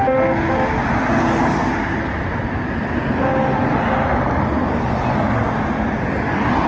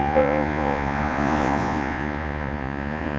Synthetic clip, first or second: second